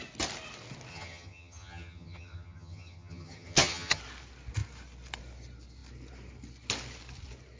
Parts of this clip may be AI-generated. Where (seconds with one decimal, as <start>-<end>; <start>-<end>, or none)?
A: 0.9-4.0